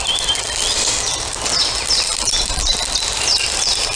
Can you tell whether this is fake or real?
real